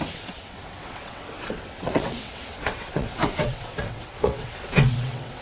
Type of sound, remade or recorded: remade